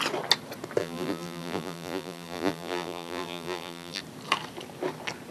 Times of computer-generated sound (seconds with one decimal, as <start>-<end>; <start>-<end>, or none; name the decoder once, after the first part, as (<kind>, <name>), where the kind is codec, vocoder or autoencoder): 0.8-4.0 (vocoder, BigVGAN v2)